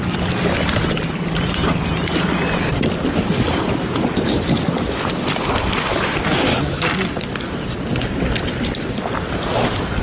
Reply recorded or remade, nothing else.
recorded